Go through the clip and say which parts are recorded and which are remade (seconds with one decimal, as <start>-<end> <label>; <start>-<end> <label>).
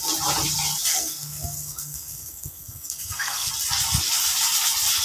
0.0-0.9 recorded; 0.9-3.5 remade; 3.5-5.0 recorded